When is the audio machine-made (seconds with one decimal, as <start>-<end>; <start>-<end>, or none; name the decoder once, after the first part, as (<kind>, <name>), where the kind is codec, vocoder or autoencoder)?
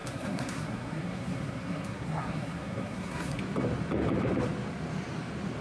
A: 0.0-3.4 (codec, SNAC)